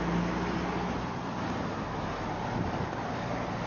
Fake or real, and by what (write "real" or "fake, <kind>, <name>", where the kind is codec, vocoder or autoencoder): real